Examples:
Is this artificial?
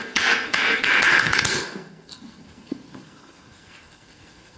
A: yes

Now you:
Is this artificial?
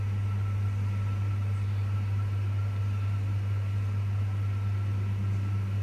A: no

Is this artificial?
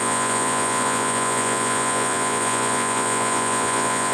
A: yes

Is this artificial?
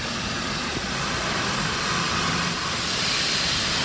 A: no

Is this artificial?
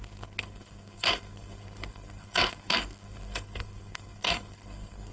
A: yes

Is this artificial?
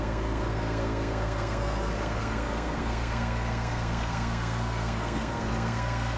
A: yes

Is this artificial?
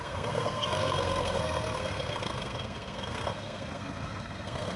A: yes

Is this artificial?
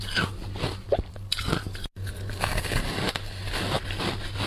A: no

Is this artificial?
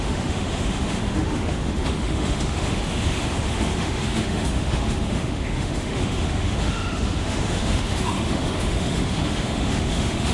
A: yes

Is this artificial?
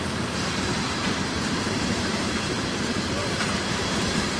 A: yes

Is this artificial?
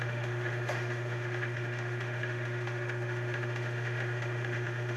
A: yes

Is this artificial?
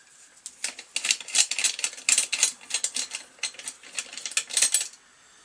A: no